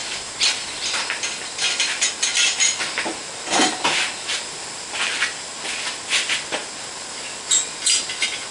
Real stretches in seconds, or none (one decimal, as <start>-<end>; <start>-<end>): 0.0-8.5